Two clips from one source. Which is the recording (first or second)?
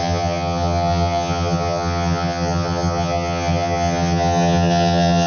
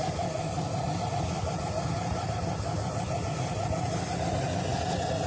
second